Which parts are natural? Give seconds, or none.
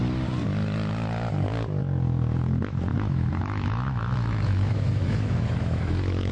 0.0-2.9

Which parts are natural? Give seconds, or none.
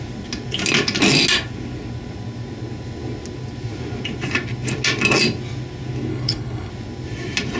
0.0-6.1; 6.7-7.6